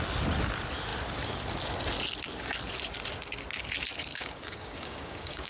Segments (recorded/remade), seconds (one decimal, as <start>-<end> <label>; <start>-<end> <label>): 0.0-4.1 recorded; 4.1-5.5 remade